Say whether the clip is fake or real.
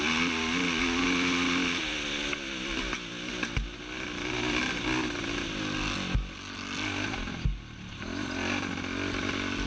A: real